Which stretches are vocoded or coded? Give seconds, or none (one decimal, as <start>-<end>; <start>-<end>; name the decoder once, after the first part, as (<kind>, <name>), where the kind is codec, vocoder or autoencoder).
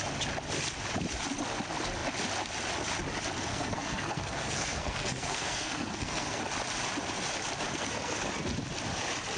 3.5-6.4 (codec, SNAC); 7.7-8.3